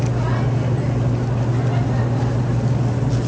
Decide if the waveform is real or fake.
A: real